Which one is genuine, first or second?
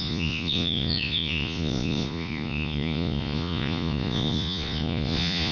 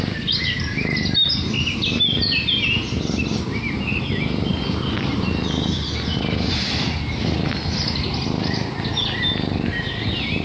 second